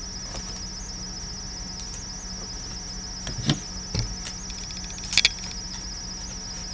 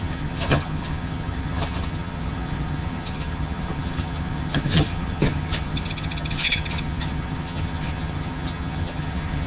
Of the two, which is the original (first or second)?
first